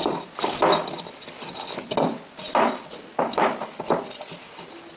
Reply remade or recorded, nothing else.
recorded